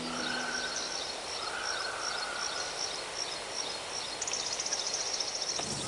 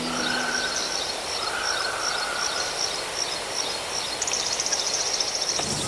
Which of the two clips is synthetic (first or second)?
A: second